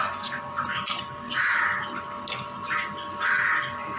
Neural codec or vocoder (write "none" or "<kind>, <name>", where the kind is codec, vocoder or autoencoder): none